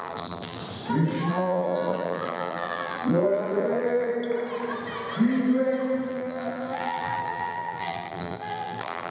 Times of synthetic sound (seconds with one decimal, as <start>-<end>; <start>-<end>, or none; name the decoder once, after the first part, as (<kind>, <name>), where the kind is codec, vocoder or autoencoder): 0.0-0.6 (vocoder, BigVGAN v2); 1.3-4.1; 6.1-9.1